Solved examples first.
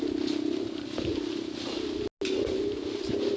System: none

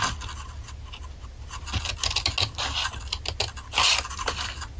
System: none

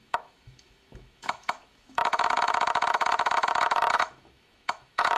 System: autoencoder, DAC-VAE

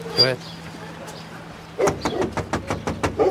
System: none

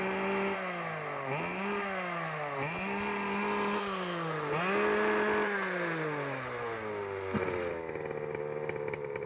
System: none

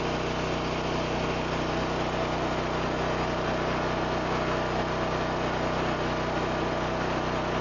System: none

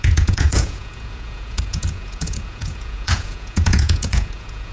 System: vocoder, Vocos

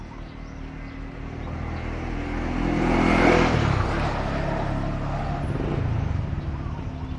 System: none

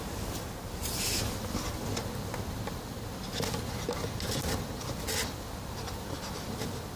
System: none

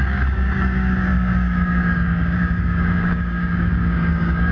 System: codec, DAC